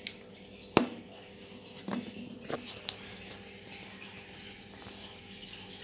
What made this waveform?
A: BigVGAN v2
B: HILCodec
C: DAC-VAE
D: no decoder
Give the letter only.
D